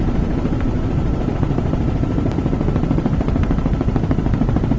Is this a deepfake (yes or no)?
yes